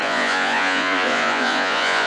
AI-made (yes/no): yes